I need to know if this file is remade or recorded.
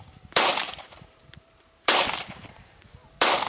remade